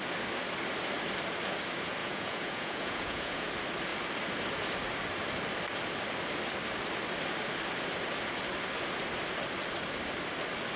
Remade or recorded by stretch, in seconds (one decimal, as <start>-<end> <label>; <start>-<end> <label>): 0.0-2.0 recorded; 2.0-3.5 remade; 3.5-10.8 recorded